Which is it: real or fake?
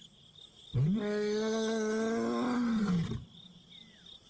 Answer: real